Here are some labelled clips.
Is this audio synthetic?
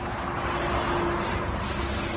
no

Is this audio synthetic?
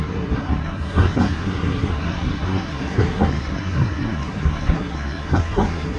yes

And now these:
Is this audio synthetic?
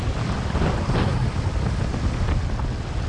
no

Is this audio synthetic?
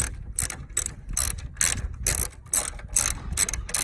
no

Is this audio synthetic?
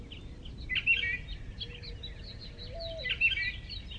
no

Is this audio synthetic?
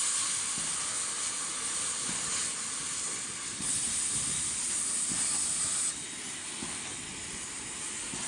no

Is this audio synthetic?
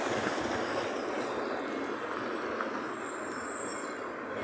no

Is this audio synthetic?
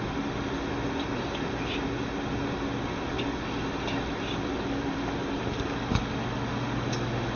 no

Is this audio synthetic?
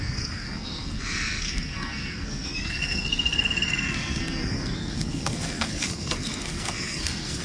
yes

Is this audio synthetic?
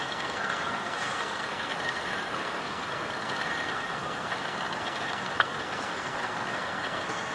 yes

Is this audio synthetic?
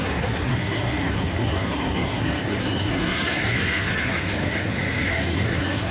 yes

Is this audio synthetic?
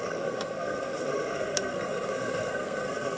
yes